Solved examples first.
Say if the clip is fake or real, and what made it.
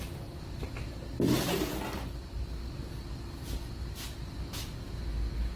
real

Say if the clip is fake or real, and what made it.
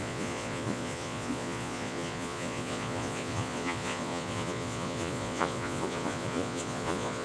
fake, vocoder, Vocos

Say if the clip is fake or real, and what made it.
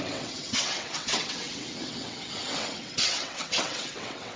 fake, vocoder, WaveNeXt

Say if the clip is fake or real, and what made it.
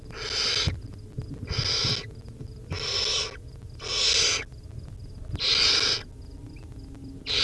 real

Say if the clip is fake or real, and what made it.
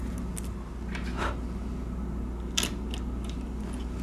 real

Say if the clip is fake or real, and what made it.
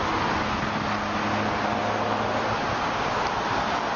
real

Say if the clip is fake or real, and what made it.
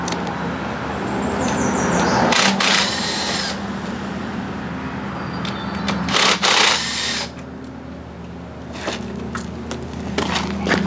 real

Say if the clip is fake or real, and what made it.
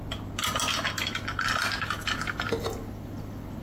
real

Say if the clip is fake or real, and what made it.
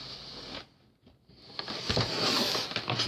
real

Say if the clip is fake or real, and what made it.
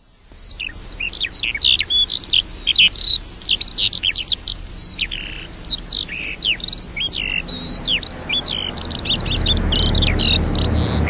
real